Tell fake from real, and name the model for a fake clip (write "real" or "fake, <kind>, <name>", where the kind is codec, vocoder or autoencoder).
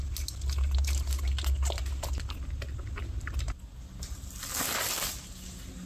real